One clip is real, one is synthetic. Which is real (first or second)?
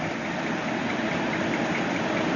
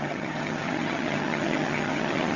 first